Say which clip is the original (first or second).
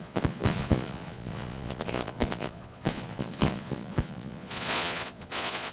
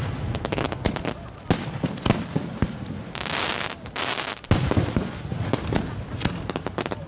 second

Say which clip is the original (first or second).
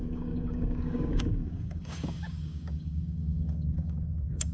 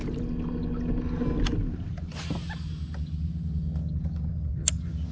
second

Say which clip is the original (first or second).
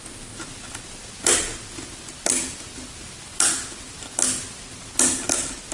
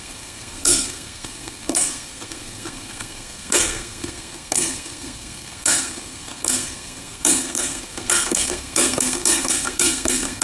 first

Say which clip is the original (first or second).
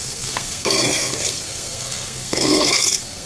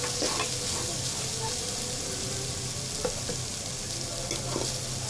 second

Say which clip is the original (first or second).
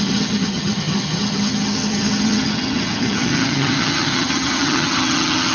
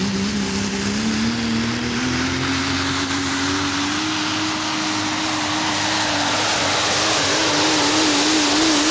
second